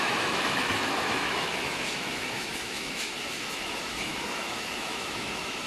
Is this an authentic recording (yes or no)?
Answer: no